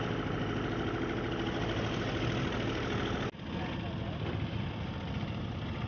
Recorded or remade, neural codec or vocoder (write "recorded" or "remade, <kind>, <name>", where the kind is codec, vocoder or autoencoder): recorded